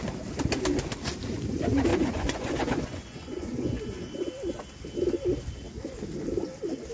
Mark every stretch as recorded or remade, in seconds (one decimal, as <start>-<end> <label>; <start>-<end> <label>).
0.0-1.9 recorded; 1.9-4.2 remade; 4.2-6.9 recorded